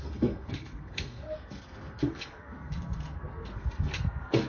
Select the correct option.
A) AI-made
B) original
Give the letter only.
A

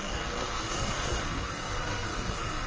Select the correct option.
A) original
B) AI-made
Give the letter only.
B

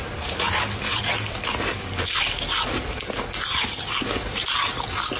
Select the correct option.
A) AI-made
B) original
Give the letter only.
B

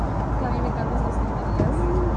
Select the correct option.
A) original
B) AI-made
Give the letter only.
A